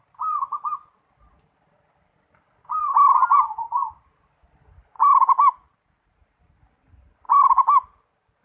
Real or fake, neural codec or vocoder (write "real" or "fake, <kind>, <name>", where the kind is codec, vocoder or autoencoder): real